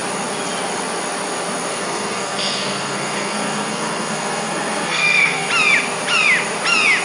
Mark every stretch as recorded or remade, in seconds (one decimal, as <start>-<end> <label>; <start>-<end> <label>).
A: 0.0-1.7 recorded; 1.7-5.5 remade; 5.5-7.0 recorded